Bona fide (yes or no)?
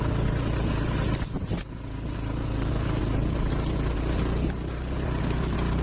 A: yes